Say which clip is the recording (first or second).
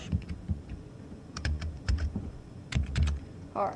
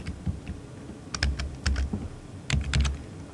second